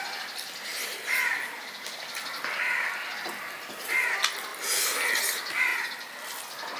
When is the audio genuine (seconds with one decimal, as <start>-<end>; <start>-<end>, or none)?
0.0-0.7; 3.5-5.7